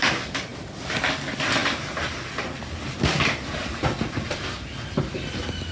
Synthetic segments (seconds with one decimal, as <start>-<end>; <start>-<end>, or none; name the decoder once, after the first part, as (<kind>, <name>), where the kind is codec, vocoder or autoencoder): none